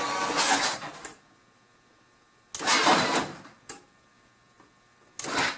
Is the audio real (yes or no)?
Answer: yes